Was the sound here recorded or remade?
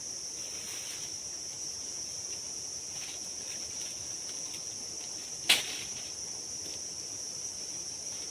recorded